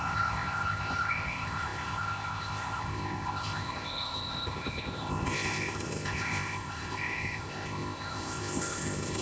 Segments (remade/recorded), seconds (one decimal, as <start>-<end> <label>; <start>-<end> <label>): 0.0-9.2 remade